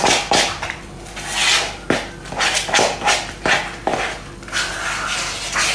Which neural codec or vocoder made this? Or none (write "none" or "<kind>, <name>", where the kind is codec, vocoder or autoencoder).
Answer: none